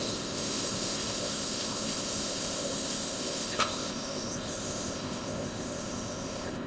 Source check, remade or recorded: remade